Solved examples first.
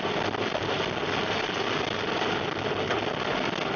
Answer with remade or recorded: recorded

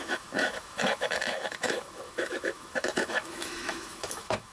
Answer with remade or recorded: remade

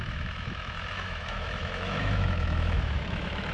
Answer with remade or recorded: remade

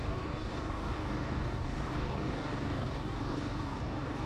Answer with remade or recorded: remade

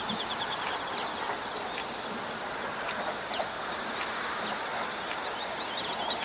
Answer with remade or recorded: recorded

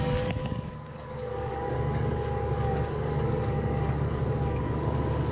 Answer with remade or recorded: remade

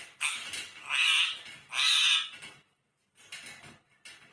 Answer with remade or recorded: recorded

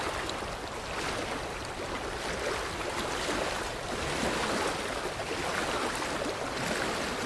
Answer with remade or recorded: recorded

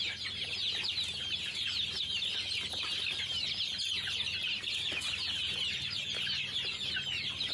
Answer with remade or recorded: recorded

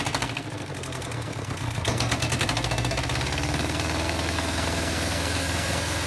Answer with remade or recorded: remade